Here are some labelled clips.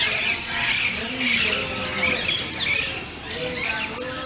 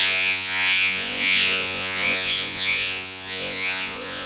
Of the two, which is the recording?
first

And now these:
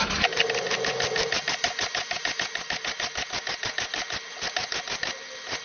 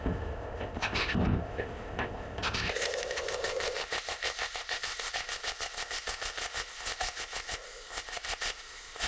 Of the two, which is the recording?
first